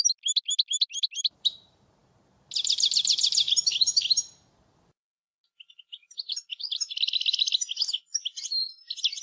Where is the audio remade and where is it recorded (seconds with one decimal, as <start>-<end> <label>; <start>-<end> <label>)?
0.0-9.2 recorded